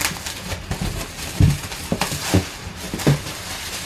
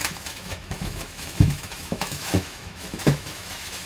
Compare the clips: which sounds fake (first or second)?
second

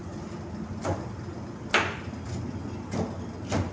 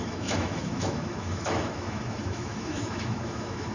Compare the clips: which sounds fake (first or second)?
second